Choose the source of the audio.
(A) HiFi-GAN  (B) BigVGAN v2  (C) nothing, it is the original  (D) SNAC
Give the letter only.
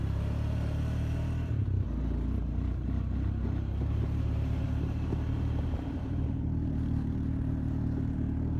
B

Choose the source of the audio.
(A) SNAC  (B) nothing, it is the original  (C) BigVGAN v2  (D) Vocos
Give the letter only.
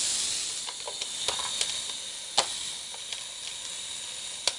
B